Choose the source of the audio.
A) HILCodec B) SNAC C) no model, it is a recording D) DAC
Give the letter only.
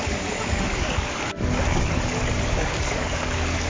D